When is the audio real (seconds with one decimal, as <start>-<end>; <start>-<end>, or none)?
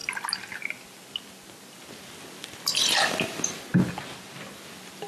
0.0-1.9; 3.7-4.5